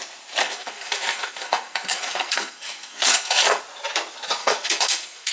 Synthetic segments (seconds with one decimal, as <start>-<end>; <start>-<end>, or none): 0.4-3.6; 4.4-5.3